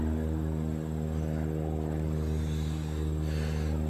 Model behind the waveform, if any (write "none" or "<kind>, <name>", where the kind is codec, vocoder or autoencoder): none